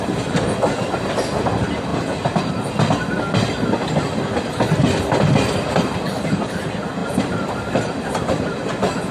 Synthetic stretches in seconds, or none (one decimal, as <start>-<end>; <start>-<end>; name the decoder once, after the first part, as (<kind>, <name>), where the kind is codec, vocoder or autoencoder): 7.0-8.6 (vocoder, BigVGAN v2)